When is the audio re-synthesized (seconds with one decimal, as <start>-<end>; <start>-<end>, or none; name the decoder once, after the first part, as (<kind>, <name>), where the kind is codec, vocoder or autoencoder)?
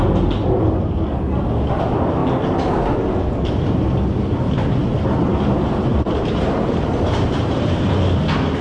5.3-7.9 (vocoder, BigVGAN v2)